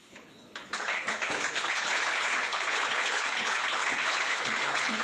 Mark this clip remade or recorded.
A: remade